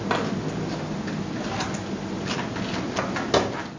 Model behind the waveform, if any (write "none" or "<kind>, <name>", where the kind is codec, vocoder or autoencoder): none